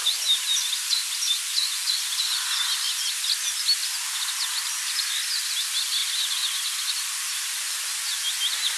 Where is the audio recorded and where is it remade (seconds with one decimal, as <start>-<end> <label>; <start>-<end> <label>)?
0.0-8.8 recorded